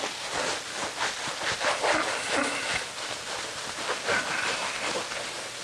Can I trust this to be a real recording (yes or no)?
yes